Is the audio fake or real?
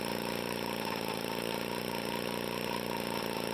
real